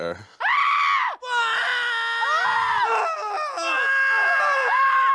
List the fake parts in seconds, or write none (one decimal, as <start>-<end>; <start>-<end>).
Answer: none